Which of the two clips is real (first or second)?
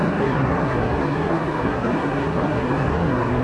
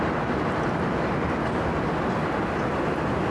second